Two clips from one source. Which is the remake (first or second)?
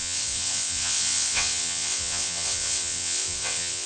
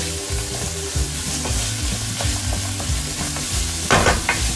first